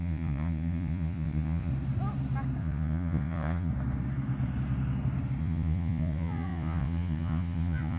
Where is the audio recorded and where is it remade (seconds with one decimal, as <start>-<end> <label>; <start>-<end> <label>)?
0.0-1.7 remade; 1.7-2.6 recorded; 2.6-3.7 remade; 3.7-5.4 recorded; 5.4-8.0 remade